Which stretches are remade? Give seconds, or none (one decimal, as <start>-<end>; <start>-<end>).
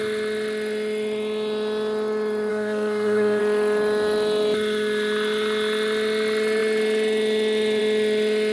2.5-3.4